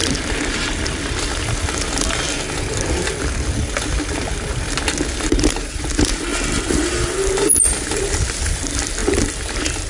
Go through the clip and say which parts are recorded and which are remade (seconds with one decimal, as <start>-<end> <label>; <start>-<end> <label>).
0.0-9.9 recorded